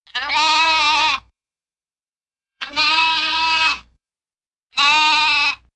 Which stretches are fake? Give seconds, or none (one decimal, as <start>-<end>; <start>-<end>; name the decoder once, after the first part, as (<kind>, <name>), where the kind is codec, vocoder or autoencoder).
0.6-4.1 (codec, SNAC)